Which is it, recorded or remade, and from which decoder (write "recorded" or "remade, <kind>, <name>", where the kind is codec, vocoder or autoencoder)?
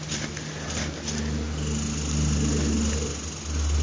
recorded